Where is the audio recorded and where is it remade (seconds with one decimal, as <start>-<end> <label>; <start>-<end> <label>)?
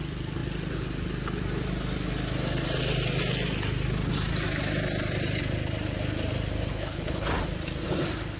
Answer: 0.0-6.7 recorded; 6.7-7.3 remade; 7.3-8.4 recorded